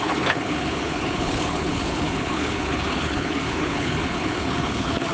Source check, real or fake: fake